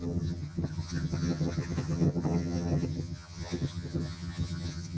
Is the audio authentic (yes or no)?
no